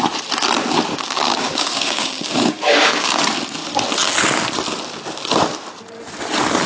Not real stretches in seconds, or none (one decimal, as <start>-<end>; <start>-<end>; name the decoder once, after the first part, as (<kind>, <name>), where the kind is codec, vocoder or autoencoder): 0.9-3.2 (codec, DAC)